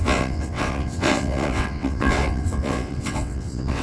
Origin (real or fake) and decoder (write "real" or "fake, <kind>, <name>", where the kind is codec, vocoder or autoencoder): fake, vocoder, WaveNeXt